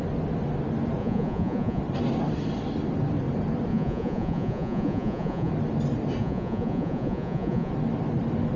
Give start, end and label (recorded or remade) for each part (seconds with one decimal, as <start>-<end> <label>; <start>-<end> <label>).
0.0-1.0 recorded; 1.0-1.8 remade; 1.8-3.7 recorded; 3.7-5.5 remade; 5.5-6.2 recorded; 6.2-7.7 remade; 7.7-8.6 recorded